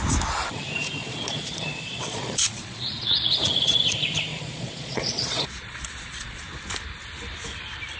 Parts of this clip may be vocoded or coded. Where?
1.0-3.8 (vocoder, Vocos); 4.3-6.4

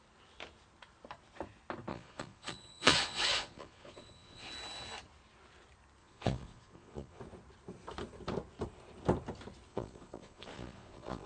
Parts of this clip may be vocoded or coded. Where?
1.9-4.5 (vocoder, Vocos); 6.0-7.2; 9.7-11.3